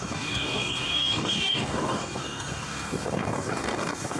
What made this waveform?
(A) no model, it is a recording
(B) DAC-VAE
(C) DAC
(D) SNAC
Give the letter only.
C